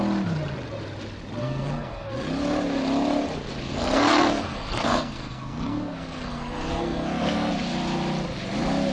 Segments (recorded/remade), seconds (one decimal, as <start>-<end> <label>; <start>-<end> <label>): 0.0-1.4 recorded; 1.4-2.1 remade; 2.1-3.7 recorded; 3.7-7.5 remade; 7.5-8.9 recorded